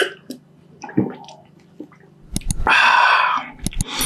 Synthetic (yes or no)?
no